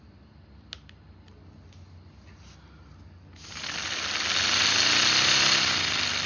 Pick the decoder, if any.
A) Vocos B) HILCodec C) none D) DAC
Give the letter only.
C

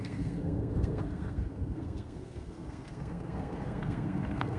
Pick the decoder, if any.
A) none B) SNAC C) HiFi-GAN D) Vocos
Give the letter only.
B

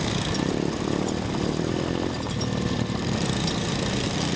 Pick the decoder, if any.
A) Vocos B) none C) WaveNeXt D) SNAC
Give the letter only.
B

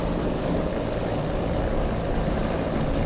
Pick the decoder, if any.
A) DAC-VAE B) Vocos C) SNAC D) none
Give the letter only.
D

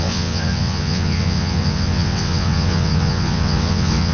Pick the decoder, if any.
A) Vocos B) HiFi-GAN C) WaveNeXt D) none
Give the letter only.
C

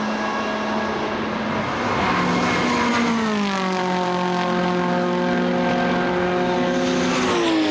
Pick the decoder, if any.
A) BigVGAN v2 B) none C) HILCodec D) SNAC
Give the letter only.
B